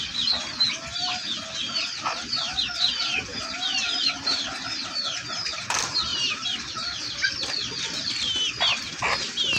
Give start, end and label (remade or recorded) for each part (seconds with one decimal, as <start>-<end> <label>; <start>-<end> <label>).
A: 0.0-9.6 recorded

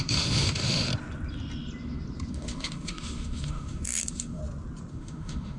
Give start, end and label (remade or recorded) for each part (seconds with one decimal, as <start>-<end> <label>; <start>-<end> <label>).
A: 0.0-0.9 remade; 0.9-2.3 recorded; 2.3-4.4 remade; 4.4-4.9 recorded; 4.9-5.6 remade

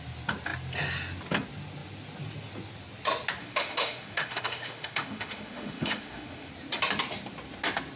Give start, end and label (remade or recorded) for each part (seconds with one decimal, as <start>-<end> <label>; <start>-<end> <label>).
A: 0.0-3.4 recorded; 3.4-6.5 remade; 6.5-8.0 recorded